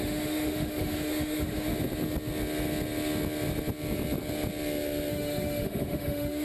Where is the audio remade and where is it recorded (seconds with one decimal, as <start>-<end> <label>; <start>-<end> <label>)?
0.0-1.7 remade; 1.7-5.1 recorded; 5.1-6.4 remade